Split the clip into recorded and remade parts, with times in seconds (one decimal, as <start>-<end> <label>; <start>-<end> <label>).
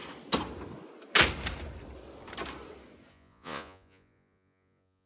0.0-3.1 recorded; 3.1-5.1 remade